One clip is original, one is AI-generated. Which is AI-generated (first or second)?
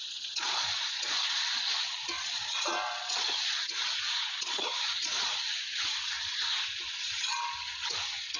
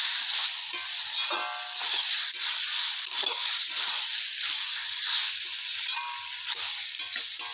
first